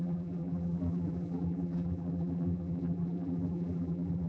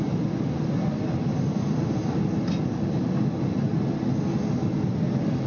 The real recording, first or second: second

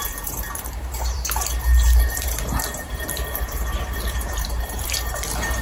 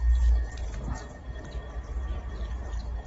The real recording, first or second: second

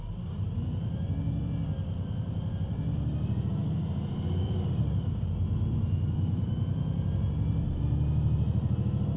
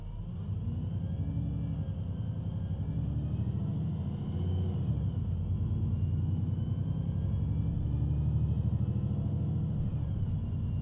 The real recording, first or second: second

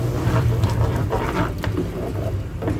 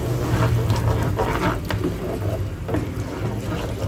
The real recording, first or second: second